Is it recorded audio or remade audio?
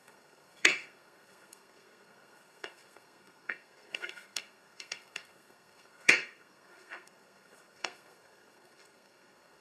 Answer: remade